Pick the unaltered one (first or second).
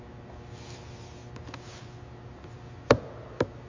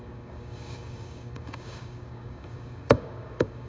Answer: first